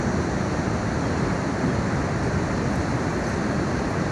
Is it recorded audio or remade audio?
recorded